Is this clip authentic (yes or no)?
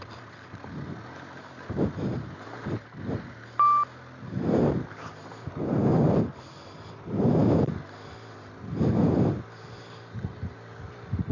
yes